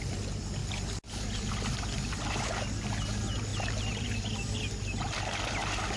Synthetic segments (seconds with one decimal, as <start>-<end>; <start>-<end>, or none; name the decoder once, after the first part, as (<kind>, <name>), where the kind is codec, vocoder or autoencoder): none